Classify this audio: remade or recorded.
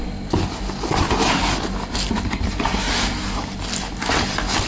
recorded